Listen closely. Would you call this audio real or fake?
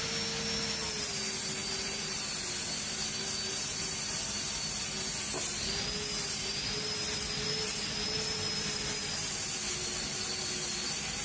real